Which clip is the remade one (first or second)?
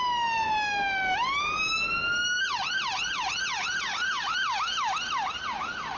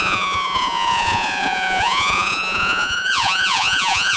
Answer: second